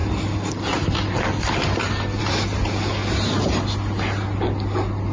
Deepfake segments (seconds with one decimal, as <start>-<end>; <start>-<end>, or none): none